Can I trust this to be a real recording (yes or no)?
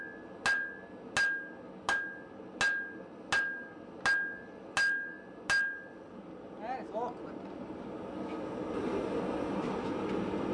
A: yes